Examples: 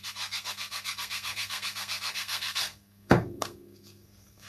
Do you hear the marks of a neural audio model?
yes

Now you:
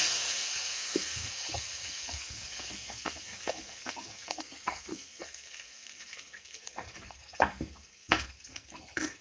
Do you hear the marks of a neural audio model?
yes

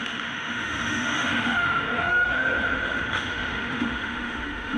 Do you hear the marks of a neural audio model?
yes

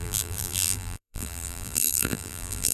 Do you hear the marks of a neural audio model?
yes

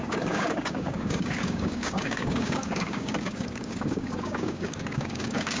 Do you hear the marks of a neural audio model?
yes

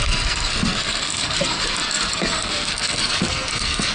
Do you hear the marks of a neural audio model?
yes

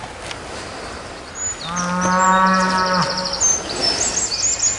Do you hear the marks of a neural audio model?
no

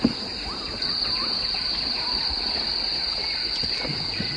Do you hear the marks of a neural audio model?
no